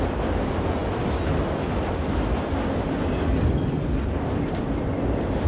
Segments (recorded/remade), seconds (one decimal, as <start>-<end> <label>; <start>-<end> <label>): 0.0-5.5 recorded